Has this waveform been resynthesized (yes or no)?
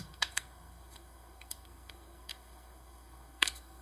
yes